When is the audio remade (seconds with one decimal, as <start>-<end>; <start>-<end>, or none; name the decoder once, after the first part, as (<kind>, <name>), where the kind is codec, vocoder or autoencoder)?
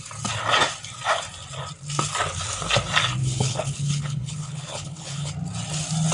3.2-5.3 (codec, HILCodec)